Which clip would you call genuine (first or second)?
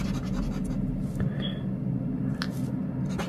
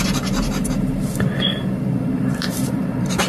first